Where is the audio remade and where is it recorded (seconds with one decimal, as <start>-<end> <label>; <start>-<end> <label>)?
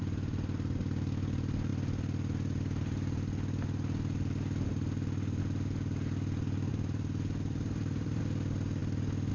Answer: 0.0-6.7 recorded; 6.7-8.2 remade; 8.2-9.3 recorded